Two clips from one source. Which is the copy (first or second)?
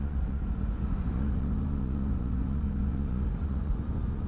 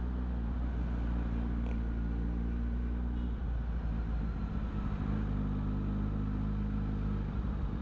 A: first